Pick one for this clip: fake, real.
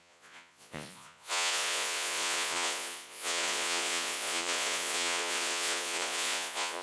fake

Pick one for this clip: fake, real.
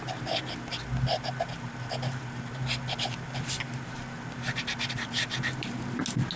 real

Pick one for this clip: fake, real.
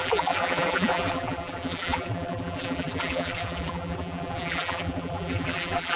fake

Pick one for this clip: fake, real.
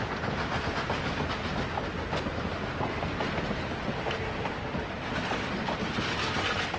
real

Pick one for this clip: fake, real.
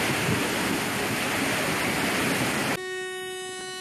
real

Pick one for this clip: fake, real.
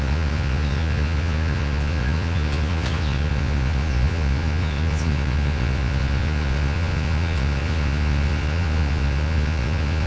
fake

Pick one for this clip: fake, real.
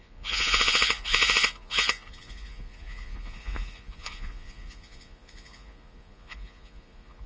fake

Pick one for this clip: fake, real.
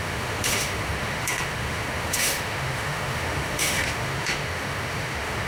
fake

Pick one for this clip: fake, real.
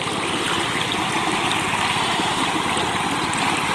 real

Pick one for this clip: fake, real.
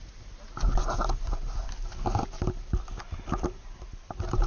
real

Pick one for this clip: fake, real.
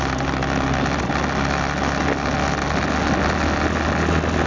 real